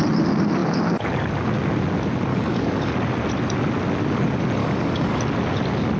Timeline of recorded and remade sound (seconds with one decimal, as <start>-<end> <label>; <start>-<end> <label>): 0.0-2.3 recorded; 2.3-2.9 remade; 2.9-4.6 recorded; 4.6-5.2 remade; 5.2-6.0 recorded